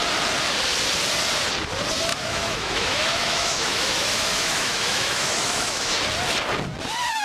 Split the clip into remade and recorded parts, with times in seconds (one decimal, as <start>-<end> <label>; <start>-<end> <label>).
0.0-2.1 recorded; 2.1-6.0 remade; 6.0-7.2 recorded